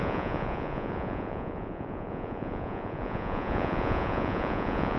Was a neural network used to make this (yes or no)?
yes